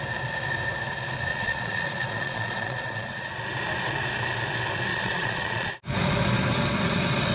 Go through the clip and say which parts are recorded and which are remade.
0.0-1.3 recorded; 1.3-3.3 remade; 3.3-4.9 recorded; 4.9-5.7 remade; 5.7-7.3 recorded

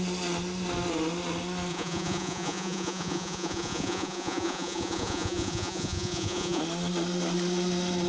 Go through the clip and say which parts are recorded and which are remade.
0.0-1.7 recorded; 1.7-6.6 remade; 6.6-8.1 recorded

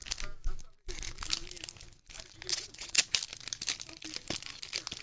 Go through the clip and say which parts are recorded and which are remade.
0.0-2.5 recorded; 2.5-3.0 remade; 3.0-5.0 recorded

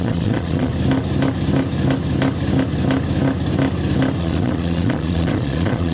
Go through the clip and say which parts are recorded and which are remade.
0.0-0.7 remade; 0.7-4.2 recorded; 4.2-5.9 remade

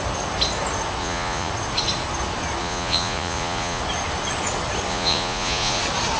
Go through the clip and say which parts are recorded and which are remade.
0.0-1.0 recorded; 1.0-1.5 remade; 1.5-2.6 recorded; 2.6-3.8 remade; 3.8-4.9 recorded; 4.9-5.8 remade; 5.8-6.2 recorded